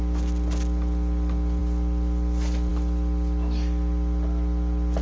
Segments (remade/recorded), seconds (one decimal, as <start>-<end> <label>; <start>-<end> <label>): 0.0-5.0 recorded